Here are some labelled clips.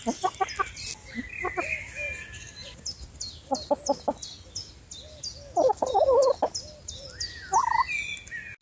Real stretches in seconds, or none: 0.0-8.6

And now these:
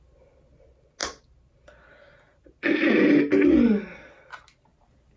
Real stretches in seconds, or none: 0.0-5.2

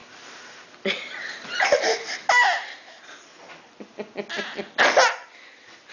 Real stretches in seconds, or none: 3.5-5.9